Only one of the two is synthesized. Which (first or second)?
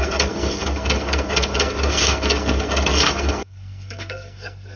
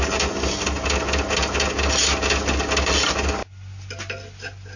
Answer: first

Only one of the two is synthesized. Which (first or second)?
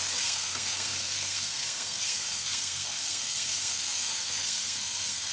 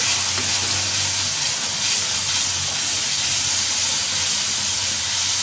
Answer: first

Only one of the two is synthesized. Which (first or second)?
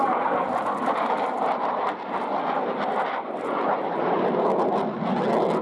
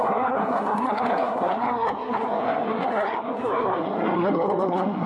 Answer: second